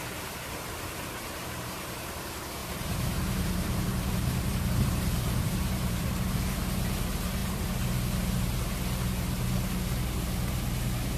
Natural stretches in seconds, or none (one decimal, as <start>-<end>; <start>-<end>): 0.0-1.4; 2.2-2.6; 6.1-11.2